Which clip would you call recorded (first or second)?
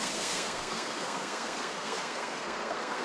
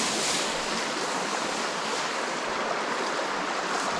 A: second